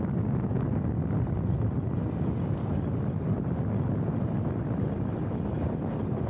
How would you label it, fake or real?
real